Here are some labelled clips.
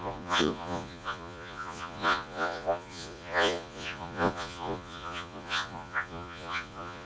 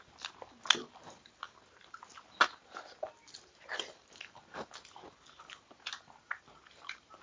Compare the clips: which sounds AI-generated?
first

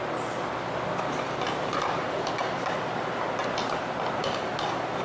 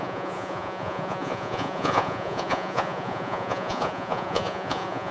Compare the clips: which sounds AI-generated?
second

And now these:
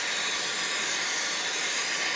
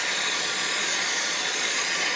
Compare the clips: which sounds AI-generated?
second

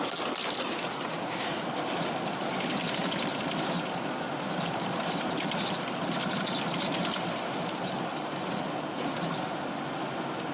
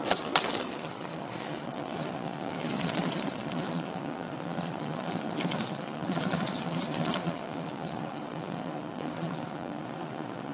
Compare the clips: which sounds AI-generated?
second